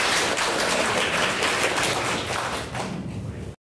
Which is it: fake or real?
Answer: real